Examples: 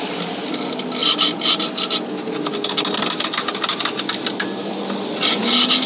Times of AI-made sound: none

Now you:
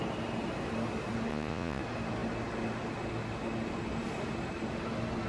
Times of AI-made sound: 1.3-1.8 (vocoder, Vocos)

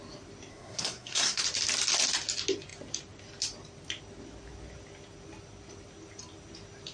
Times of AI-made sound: 0.5-1.4 (codec, SNAC)

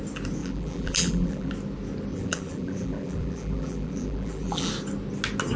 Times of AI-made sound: 0.4-1.5 (vocoder, BigVGAN v2); 2.1-4.7

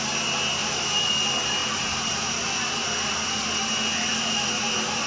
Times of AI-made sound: 0.6-1.1 (vocoder, BigVGAN v2); 1.6-5.1

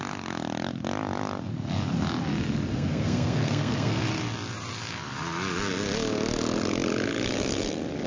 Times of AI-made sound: 2.7-4.0 (codec, SNAC)

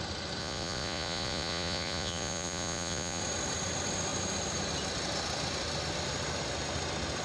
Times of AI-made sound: 0.4-3.2 (vocoder, Vocos)